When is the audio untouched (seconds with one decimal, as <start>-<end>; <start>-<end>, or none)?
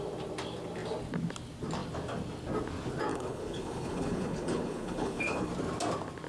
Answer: 0.0-3.1; 5.5-6.3